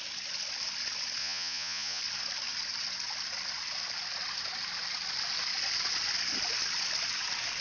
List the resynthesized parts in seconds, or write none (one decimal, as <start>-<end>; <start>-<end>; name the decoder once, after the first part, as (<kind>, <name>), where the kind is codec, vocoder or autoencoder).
1.2-2.0 (vocoder, Vocos)